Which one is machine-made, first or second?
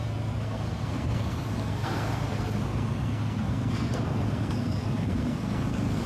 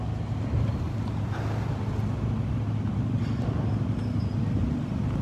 first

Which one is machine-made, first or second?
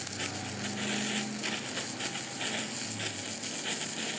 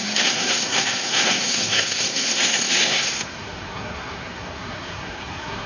second